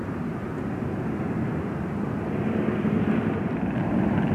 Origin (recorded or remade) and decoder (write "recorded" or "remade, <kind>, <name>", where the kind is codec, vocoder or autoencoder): recorded